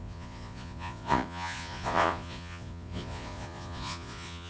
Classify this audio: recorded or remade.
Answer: remade